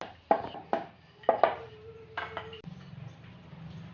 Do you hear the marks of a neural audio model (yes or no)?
no